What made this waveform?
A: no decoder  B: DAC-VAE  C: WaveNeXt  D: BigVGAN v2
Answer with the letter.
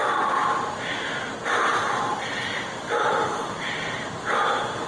A